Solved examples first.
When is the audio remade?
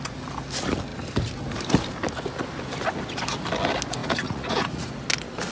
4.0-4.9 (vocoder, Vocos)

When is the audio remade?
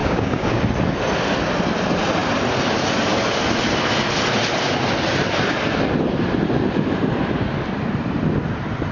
0.0-0.6 (codec, DAC)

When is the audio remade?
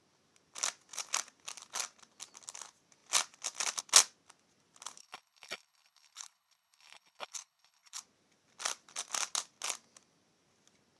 5.0-8.0 (codec, HILCodec)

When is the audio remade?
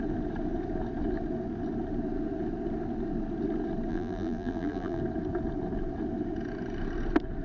3.9-5.0 (vocoder, BigVGAN v2)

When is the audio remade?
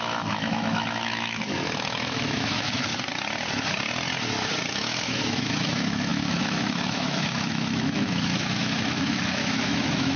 0.0-2.9 (autoencoder, DAC-VAE); 4.7-10.2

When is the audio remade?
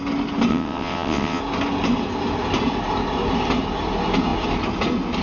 0.5-1.4 (vocoder, WaveNeXt)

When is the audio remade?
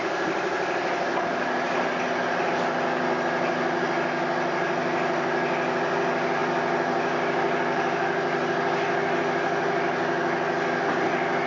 none